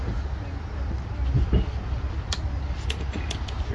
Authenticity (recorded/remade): recorded